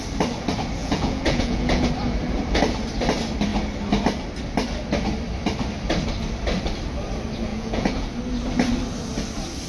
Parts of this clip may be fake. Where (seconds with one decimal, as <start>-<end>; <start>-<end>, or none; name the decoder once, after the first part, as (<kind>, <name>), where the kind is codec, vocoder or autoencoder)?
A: 0.8-1.9 (vocoder, Vocos); 7.5-8.1